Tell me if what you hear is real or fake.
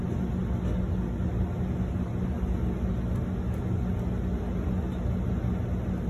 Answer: real